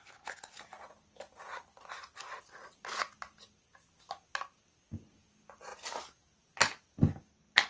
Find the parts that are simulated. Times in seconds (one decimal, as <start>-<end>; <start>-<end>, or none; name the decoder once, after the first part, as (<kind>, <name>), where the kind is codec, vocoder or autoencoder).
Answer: none